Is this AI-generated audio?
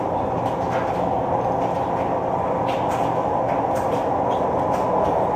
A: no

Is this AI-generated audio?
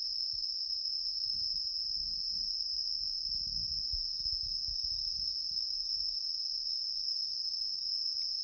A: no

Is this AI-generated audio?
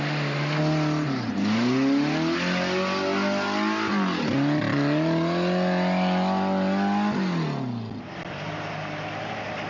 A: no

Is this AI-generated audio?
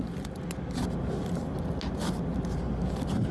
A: no